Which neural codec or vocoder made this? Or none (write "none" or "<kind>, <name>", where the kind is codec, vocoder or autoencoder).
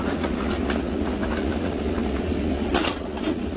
vocoder, Vocos